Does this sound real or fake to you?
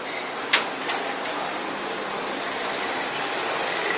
real